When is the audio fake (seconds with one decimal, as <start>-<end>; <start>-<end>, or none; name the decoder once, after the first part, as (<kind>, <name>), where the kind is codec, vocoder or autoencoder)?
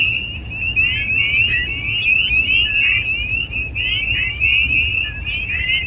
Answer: 4.9-5.4 (vocoder, BigVGAN v2)